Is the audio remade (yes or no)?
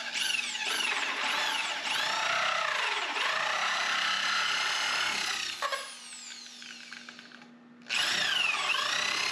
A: no